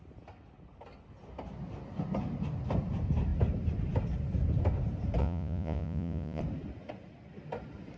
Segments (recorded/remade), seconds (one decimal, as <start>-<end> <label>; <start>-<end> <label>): 0.0-5.2 recorded; 5.2-6.4 remade; 6.4-8.0 recorded

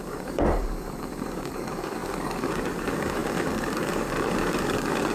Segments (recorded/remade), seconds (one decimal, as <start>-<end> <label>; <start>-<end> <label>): 0.0-5.1 remade

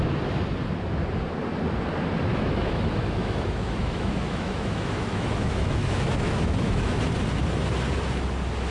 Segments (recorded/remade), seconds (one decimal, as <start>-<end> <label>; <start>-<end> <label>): 0.0-2.3 recorded; 2.3-7.0 remade; 7.0-8.7 recorded

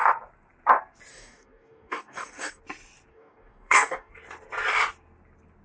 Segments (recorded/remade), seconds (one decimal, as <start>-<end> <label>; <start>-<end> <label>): 0.0-1.1 recorded; 1.1-2.6 remade; 2.6-3.1 recorded; 3.1-4.1 remade; 4.1-5.6 recorded

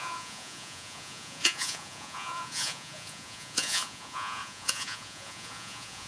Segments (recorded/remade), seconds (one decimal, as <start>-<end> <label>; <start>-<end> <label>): 0.0-6.1 remade

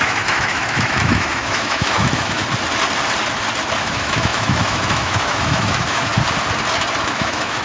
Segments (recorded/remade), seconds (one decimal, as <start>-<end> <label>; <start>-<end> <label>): 0.0-2.4 remade; 2.4-3.8 recorded; 3.8-6.1 remade; 6.1-7.1 recorded; 7.1-7.6 remade

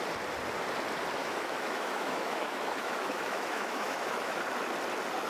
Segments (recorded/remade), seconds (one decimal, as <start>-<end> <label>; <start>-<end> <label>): 0.0-1.2 recorded; 1.2-4.4 remade; 4.4-5.3 recorded

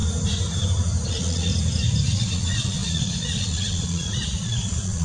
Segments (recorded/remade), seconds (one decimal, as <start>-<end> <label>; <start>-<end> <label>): 0.0-1.1 recorded; 1.1-1.5 remade; 1.5-2.1 recorded; 2.1-5.0 remade